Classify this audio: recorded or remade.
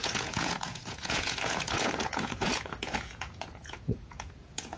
remade